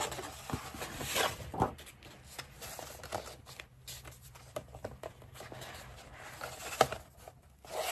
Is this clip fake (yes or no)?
no